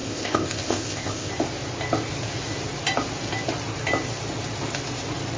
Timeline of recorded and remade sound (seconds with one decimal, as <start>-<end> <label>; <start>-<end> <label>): 0.0-1.3 remade; 1.3-5.4 recorded